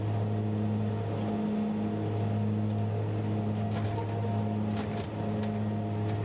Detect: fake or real real